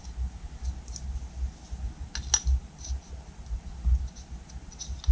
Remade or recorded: recorded